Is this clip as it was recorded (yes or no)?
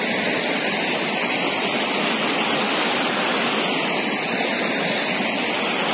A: yes